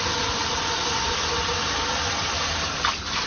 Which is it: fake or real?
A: real